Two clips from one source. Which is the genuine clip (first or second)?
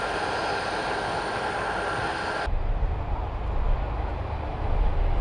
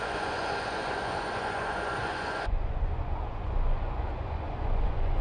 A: first